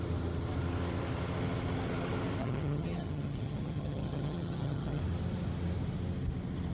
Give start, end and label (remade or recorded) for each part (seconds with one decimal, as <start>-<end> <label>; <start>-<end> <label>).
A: 0.0-2.4 recorded; 2.4-5.0 remade; 5.0-6.7 recorded